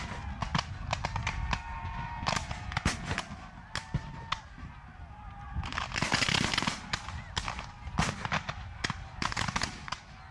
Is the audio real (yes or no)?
yes